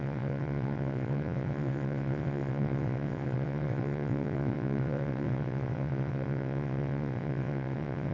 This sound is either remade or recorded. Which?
remade